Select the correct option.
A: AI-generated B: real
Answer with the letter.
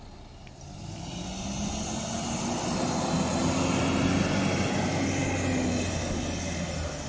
B